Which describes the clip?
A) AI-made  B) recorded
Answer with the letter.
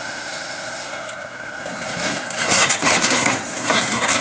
A